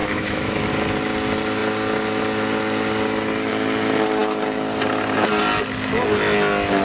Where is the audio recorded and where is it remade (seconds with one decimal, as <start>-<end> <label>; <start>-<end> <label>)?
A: 0.0-0.6 remade; 0.6-6.8 recorded